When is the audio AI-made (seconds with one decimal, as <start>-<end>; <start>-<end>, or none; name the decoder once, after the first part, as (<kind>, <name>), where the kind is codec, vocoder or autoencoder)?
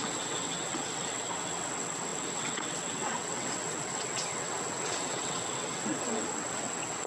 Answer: 0.0-7.1 (vocoder, WaveNeXt)